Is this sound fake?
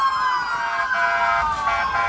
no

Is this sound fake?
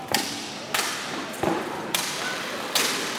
yes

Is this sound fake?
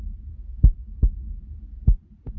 no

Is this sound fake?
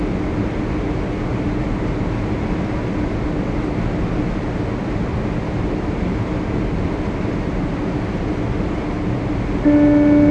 no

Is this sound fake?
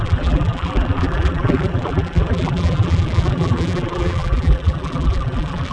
yes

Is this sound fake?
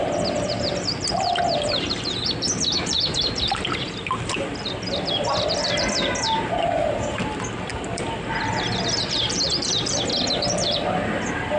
yes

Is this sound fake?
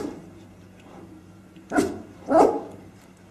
yes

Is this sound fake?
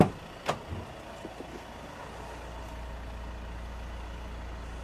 no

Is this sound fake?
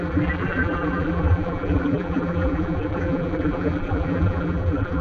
yes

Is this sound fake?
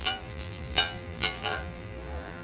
yes